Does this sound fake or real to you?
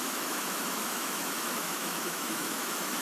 fake